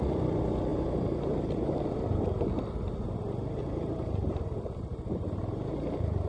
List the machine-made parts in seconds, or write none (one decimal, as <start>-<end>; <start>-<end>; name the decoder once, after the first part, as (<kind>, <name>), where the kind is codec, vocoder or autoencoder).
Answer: 0.7-1.8 (vocoder, BigVGAN v2); 3.6-4.3; 4.9-6.3